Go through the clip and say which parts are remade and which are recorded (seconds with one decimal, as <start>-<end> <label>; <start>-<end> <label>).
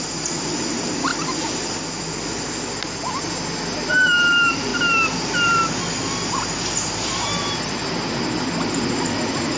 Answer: 0.0-1.1 remade; 1.1-3.9 recorded; 3.9-4.7 remade; 4.7-6.3 recorded; 6.3-7.8 remade; 7.8-8.8 recorded; 8.8-9.6 remade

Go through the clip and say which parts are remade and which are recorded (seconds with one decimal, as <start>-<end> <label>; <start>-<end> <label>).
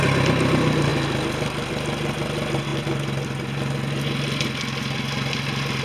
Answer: 0.0-5.8 recorded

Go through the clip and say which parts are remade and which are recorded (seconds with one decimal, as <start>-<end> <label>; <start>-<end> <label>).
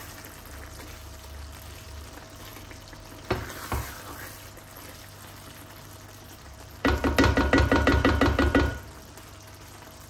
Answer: 0.0-10.1 recorded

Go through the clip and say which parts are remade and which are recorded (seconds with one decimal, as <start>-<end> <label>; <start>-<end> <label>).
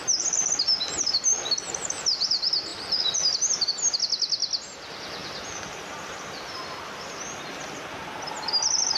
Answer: 0.0-2.7 recorded; 2.7-3.7 remade; 3.7-5.2 recorded; 5.2-7.4 remade; 7.4-9.0 recorded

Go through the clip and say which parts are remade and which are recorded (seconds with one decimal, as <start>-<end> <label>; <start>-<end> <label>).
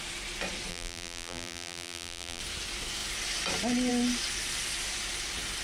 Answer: 0.0-0.7 recorded; 0.7-2.4 remade; 2.4-5.6 recorded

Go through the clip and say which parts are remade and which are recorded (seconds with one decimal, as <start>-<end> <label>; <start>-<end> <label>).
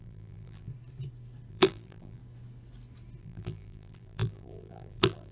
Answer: 0.0-0.7 remade; 0.7-1.5 recorded; 1.5-2.2 remade; 2.2-3.2 recorded; 3.2-5.3 remade